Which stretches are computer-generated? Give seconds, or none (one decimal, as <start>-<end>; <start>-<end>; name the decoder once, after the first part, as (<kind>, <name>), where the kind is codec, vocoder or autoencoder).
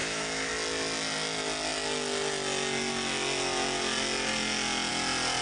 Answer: 0.0-0.5 (autoencoder, DAC-VAE)